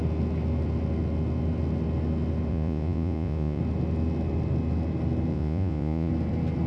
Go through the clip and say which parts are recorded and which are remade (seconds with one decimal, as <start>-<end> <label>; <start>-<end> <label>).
0.0-2.5 recorded; 2.5-3.6 remade; 3.6-5.3 recorded; 5.3-6.1 remade; 6.1-6.7 recorded

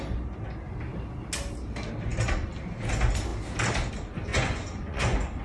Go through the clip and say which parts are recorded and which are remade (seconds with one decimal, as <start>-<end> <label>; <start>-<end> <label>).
0.0-4.3 recorded; 4.3-5.4 remade

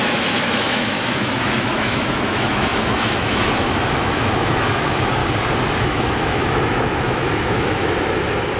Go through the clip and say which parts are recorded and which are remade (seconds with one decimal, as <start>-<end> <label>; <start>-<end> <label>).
0.0-5.2 remade; 5.2-5.8 recorded; 5.8-7.8 remade; 7.8-8.6 recorded

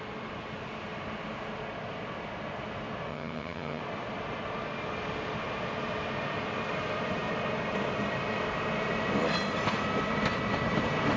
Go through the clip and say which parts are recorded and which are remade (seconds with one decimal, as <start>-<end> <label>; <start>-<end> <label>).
0.0-3.1 recorded; 3.1-3.8 remade; 3.8-11.2 recorded

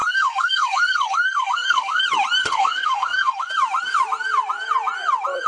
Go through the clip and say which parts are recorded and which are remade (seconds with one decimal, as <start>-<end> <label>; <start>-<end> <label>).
0.0-2.0 remade; 2.0-2.4 recorded; 2.4-3.5 remade; 3.5-5.5 recorded

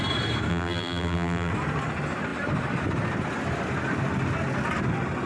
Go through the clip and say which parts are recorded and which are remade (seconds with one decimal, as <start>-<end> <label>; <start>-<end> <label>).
0.0-0.5 recorded; 0.5-1.5 remade; 1.5-5.3 recorded

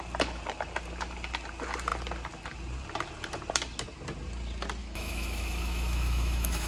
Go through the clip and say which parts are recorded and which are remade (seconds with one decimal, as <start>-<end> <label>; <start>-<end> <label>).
0.0-4.8 recorded; 4.8-6.7 remade

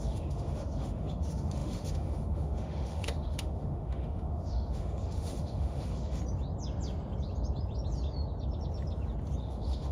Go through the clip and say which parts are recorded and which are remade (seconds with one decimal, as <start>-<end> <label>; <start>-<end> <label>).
0.0-6.2 remade; 6.2-9.4 recorded; 9.4-9.9 remade